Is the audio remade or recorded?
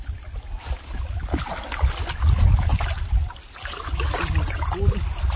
recorded